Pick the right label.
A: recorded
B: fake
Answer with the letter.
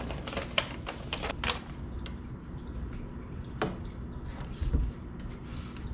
A